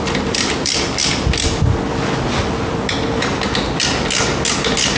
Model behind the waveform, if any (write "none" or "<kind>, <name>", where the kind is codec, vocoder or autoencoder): none